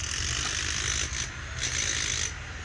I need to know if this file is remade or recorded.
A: recorded